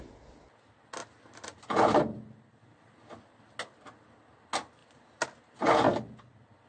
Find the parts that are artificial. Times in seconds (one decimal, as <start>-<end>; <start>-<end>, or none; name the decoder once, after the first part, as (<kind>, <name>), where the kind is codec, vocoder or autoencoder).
1.0-2.5 (vocoder, BigVGAN v2)